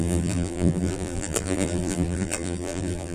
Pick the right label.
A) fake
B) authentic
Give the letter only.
A